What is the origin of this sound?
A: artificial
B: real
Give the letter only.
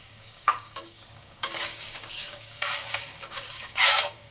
A